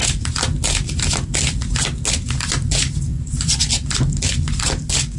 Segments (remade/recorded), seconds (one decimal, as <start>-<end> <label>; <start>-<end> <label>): 0.0-3.1 recorded; 3.1-3.6 remade; 3.6-5.2 recorded

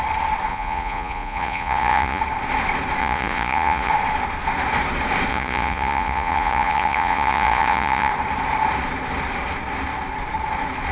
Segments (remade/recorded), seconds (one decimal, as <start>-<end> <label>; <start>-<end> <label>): 0.0-0.5 recorded; 0.5-2.2 remade; 2.2-3.0 recorded; 3.0-3.9 remade; 3.9-5.3 recorded; 5.3-8.1 remade; 8.1-10.9 recorded

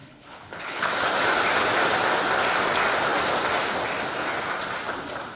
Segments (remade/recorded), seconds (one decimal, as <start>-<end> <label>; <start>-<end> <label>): 0.0-0.9 remade; 0.9-5.4 recorded

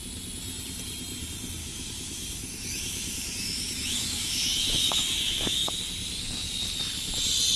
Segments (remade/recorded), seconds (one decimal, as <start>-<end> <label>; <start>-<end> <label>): 0.0-1.6 recorded; 1.6-5.8 remade; 5.8-7.6 recorded

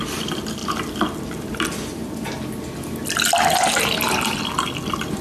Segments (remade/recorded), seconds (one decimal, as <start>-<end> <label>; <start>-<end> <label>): 0.0-3.7 recorded; 3.7-4.4 remade; 4.4-5.2 recorded

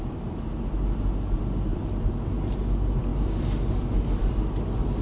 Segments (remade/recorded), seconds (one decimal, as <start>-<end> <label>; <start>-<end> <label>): 0.0-1.7 recorded; 1.7-2.5 remade; 2.5-5.0 recorded

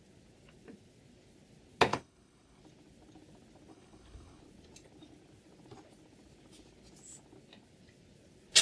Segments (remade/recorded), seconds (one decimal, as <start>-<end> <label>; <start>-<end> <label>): 0.0-1.9 recorded; 1.9-2.6 remade; 2.6-3.7 recorded; 3.7-4.4 remade; 4.4-8.6 recorded